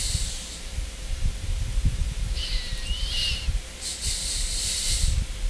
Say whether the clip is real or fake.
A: fake